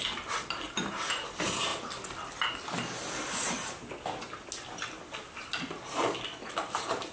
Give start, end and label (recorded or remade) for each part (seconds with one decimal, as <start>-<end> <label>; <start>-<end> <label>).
0.0-7.1 recorded